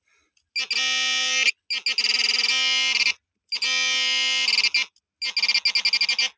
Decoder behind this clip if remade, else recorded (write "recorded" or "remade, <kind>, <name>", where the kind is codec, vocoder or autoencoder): recorded